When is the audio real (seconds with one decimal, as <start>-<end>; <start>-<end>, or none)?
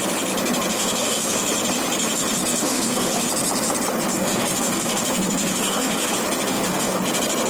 0.0-0.7; 1.5-2.5; 3.3-4.1; 6.1-6.5; 7.0-7.5